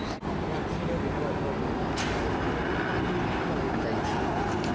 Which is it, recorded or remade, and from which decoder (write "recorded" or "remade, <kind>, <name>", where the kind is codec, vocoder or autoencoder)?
recorded